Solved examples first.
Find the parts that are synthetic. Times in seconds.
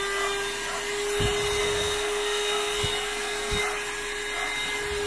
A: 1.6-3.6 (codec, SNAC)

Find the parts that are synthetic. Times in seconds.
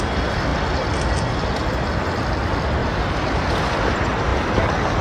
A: 2.8-3.7 (vocoder, BigVGAN v2)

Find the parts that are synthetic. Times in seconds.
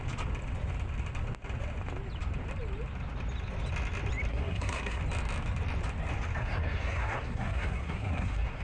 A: 4.3-5.0 (codec, SNAC); 6.4-8.6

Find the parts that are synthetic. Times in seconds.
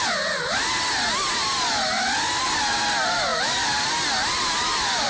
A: 3.3-5.1 (vocoder, BigVGAN v2)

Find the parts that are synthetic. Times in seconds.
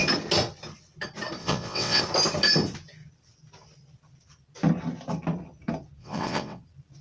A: 1.4-2.0 (vocoder, WaveNeXt); 6.0-6.6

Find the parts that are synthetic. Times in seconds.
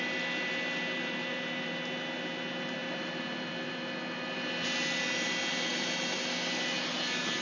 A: none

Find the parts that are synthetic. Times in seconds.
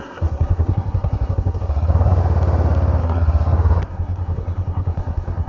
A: 0.0-2.2 (codec, SNAC); 3.0-5.5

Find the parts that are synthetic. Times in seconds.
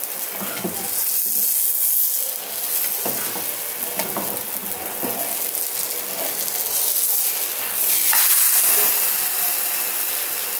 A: none